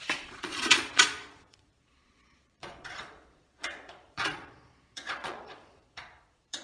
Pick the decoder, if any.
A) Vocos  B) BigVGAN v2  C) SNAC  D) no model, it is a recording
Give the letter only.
A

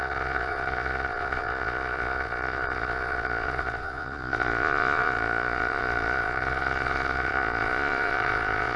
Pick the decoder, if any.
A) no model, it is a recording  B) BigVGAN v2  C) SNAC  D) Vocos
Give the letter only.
D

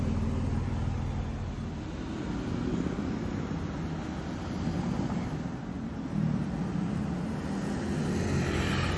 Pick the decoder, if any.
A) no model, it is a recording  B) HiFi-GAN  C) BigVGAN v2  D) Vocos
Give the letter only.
A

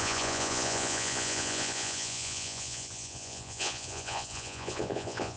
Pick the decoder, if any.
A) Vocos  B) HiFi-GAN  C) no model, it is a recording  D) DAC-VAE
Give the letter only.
A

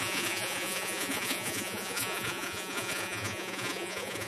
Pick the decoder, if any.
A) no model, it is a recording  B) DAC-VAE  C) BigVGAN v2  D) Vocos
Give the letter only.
D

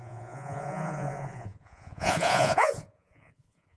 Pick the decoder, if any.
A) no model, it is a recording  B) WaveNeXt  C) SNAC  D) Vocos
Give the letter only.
D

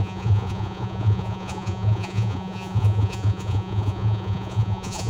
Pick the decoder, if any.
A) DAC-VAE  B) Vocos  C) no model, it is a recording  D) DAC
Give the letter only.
B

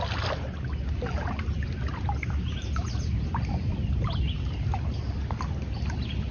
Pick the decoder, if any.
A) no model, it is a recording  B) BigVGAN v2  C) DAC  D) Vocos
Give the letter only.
A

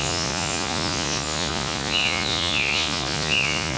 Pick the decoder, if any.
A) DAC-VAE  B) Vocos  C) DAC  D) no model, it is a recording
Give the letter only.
B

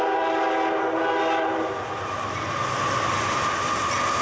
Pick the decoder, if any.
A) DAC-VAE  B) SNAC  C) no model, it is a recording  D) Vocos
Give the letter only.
C